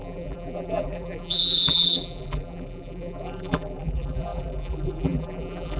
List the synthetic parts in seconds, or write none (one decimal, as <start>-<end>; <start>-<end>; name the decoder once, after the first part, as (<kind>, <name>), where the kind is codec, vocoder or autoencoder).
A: 0.0-5.8 (vocoder, BigVGAN v2)